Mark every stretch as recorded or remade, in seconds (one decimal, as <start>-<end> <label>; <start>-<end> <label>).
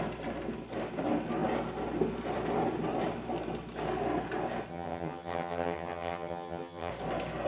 0.0-4.7 recorded; 4.7-6.9 remade; 6.9-7.5 recorded